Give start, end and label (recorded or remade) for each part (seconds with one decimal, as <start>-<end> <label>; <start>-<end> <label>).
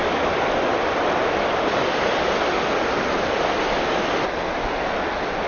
0.0-5.5 recorded